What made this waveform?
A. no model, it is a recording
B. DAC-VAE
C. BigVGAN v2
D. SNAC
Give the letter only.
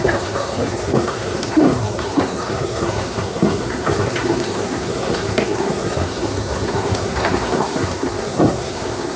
D